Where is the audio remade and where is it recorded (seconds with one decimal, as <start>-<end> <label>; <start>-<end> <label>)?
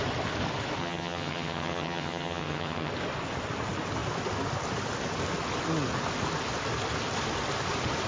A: 0.0-0.8 recorded; 0.8-2.9 remade; 2.9-8.1 recorded